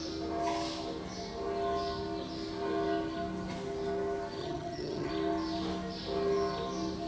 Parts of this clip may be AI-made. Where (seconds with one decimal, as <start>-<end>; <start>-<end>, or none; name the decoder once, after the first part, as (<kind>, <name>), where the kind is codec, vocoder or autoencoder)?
4.4-5.1 (vocoder, HiFi-GAN)